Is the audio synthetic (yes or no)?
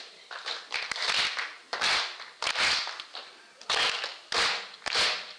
no